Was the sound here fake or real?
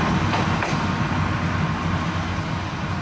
real